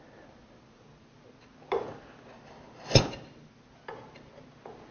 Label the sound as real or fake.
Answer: real